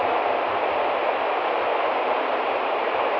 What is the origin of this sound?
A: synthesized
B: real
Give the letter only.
B